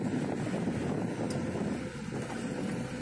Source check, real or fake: real